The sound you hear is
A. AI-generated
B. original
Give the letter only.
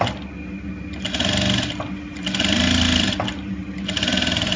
B